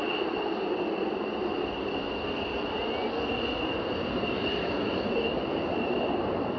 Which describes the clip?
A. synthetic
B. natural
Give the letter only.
B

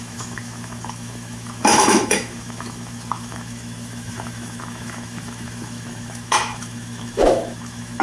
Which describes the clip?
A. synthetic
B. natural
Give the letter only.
A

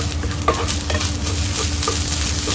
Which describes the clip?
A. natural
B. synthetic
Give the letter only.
A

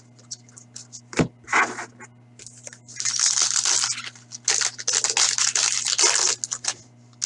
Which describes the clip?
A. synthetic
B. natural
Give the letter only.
B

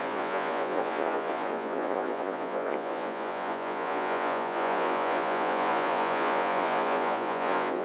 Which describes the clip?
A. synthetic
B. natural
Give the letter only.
A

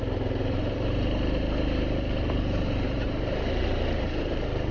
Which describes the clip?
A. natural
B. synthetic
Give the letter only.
B